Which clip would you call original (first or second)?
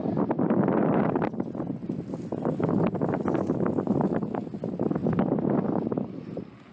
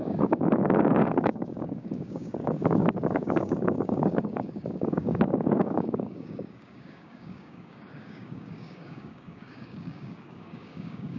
first